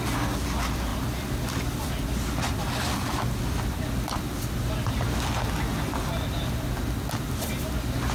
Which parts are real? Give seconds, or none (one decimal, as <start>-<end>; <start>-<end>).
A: 0.0-8.1